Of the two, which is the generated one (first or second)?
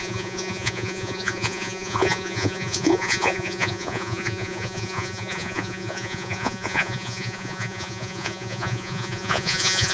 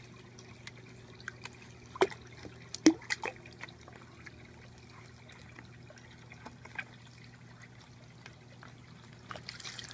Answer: first